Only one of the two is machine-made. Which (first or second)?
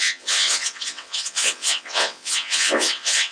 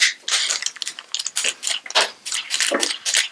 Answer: first